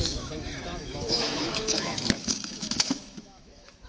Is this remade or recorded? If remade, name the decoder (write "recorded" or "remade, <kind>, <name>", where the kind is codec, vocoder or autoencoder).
remade, autoencoder, DAC-VAE